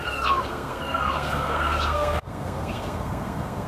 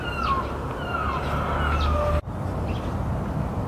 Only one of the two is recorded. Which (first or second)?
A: second